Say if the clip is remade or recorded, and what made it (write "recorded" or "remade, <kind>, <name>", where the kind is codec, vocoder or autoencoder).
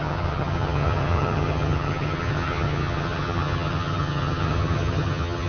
remade, vocoder, HiFi-GAN